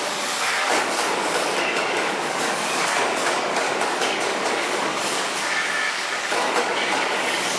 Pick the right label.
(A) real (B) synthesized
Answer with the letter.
B